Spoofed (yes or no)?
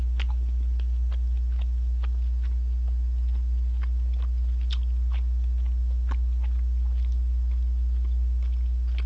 no